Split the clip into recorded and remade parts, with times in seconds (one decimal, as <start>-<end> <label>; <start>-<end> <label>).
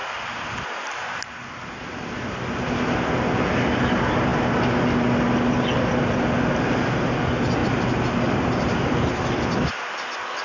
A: 0.0-1.2 remade; 1.2-7.6 recorded; 7.6-9.1 remade; 9.1-10.4 recorded